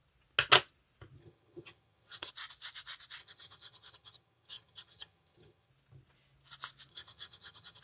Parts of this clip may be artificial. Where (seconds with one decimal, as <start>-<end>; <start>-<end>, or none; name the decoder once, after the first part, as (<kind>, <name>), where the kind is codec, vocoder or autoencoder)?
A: 1.2-2.3 (vocoder, HiFi-GAN); 3.2-5.7; 6.9-7.8